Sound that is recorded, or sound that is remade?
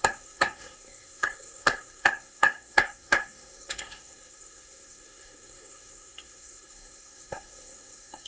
remade